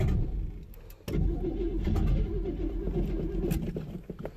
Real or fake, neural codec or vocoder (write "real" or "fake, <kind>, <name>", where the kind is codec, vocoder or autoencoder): real